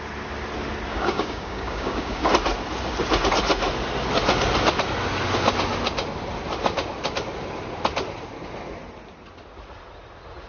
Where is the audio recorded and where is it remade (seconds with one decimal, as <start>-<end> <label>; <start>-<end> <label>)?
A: 0.0-0.9 recorded; 0.9-2.3 remade; 2.3-10.5 recorded